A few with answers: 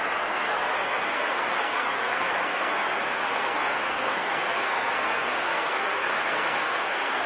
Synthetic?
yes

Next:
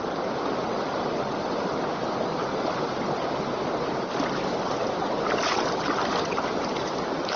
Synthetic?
no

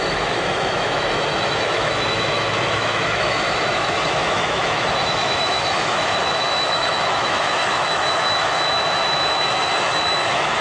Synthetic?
yes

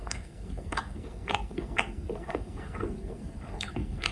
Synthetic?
yes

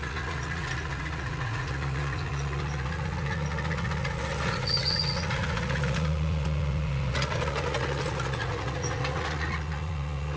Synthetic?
yes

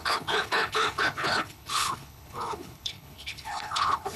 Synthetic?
yes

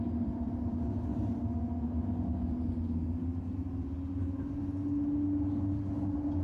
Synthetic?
no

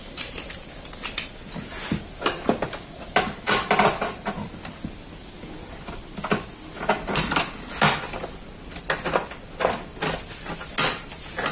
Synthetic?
no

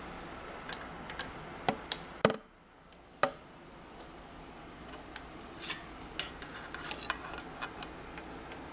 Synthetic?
no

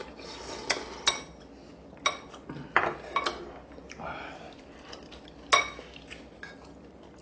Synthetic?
no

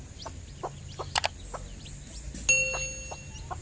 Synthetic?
no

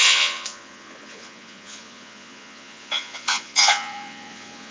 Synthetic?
yes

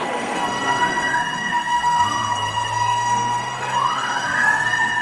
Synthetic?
yes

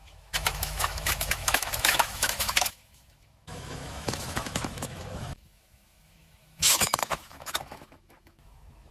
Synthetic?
yes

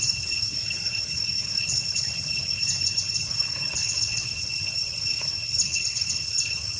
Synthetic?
yes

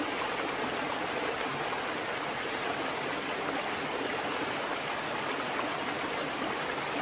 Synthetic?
no